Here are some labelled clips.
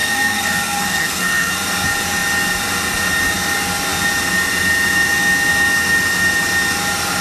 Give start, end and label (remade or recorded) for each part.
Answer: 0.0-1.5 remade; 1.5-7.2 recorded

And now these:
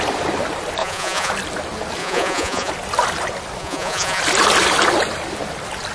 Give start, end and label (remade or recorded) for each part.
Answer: 0.0-0.8 recorded; 0.8-1.3 remade; 1.3-2.0 recorded; 2.0-2.7 remade; 2.7-3.6 recorded; 3.6-4.2 remade; 4.2-5.9 recorded